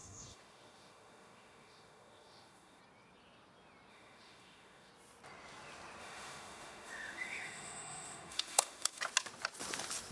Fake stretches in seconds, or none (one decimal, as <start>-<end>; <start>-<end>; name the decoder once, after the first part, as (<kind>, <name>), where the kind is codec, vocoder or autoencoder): 0.0-2.8 (autoencoder, DAC-VAE); 3.9-4.9; 6.0-9.0